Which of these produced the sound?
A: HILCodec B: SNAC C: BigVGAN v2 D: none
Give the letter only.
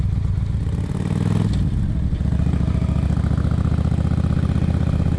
D